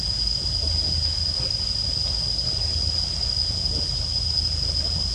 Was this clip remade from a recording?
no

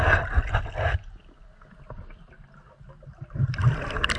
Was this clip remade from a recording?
no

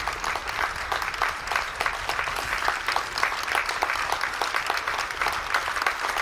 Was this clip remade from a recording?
no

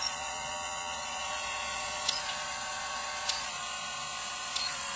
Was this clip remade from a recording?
yes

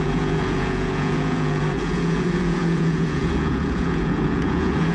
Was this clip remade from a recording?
yes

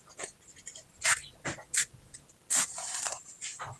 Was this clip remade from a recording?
no